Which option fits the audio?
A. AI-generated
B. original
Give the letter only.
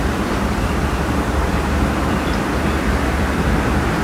A